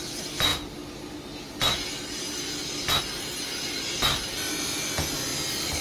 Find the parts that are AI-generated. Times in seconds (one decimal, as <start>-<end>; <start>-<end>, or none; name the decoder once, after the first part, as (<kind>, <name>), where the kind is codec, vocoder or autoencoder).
none